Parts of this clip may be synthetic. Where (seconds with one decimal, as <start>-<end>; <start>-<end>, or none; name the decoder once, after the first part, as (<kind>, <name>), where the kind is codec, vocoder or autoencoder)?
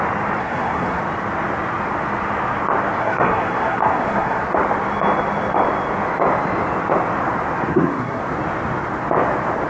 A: 0.4-1.0 (codec, SNAC); 3.0-4.4; 7.7-8.2